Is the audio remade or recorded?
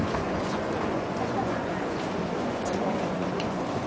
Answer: remade